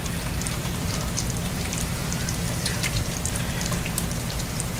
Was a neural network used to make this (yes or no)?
yes